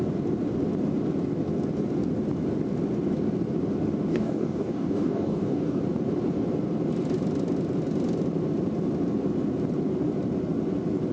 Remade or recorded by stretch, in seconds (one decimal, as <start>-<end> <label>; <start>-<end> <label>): 0.0-4.1 recorded; 4.1-5.8 remade; 5.8-11.1 recorded